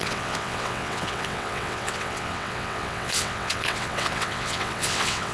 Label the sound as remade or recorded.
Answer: remade